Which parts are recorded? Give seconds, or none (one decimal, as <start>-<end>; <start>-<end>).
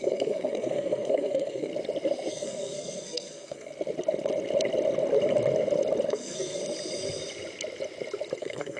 1.7-2.3; 3.7-6.1; 6.6-8.4